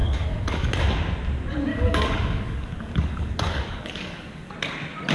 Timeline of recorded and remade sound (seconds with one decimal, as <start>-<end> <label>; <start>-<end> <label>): 0.0-0.7 remade; 0.7-1.7 recorded; 1.7-4.5 remade; 4.5-5.1 recorded